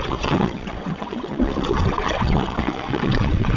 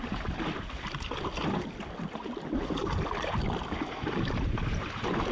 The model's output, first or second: first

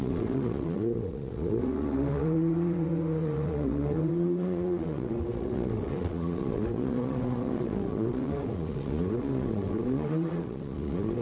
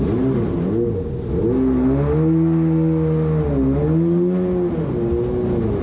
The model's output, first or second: first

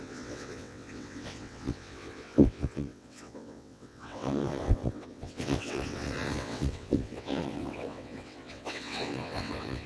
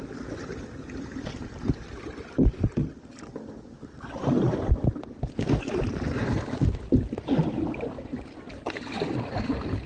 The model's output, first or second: first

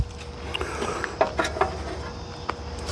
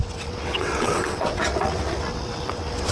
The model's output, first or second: second